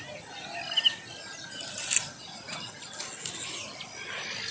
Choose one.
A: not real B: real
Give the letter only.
B